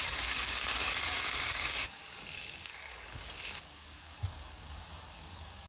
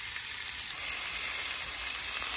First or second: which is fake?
first